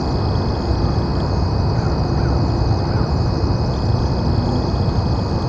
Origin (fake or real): real